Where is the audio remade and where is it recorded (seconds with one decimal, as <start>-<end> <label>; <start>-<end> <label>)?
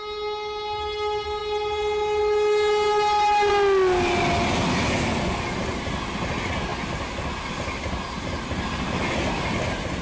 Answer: 0.0-10.0 recorded